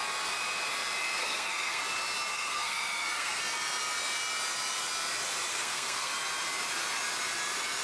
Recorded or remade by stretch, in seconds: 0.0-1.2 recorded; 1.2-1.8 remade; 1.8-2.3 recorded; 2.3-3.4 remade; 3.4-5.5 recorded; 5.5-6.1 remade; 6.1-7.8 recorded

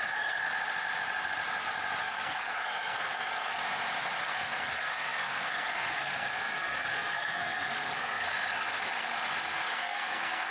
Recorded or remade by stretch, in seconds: 0.0-0.4 remade; 0.4-2.0 recorded; 2.0-3.6 remade; 3.6-4.2 recorded; 4.2-10.5 remade

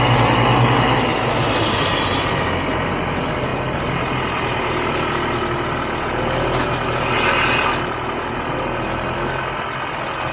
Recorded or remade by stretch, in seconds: 0.0-10.3 recorded

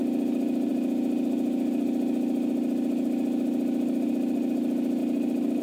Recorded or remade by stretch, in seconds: 0.0-5.6 recorded

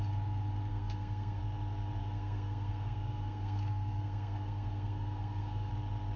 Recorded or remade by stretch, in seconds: 0.0-0.7 recorded; 0.7-1.4 remade; 1.4-2.0 recorded; 2.0-5.7 remade; 5.7-6.2 recorded

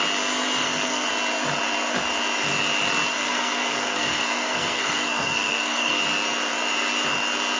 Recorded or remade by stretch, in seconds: 0.0-0.6 recorded; 0.6-1.1 remade; 1.1-3.1 recorded; 3.1-6.0 remade; 6.0-7.6 recorded

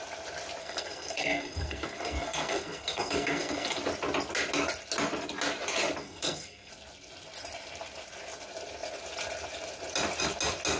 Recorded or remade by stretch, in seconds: 0.0-0.6 recorded; 0.6-3.8 remade; 3.8-6.0 recorded; 6.0-6.7 remade; 6.7-10.8 recorded